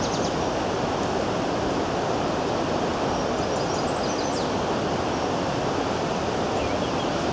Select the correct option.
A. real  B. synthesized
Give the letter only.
A